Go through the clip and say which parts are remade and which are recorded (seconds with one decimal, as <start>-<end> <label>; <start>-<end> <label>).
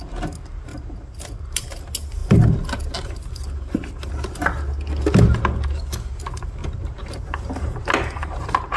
0.0-0.7 recorded; 0.7-1.8 remade; 1.8-6.6 recorded; 6.6-7.8 remade; 7.8-8.8 recorded